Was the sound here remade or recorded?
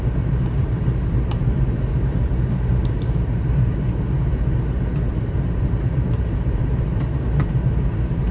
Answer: remade